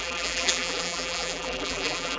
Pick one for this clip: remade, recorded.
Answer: remade